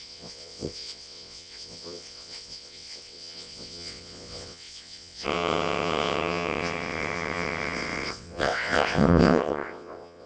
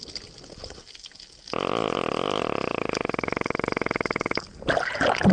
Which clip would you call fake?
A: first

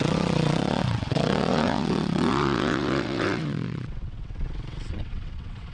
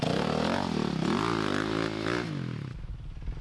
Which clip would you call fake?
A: first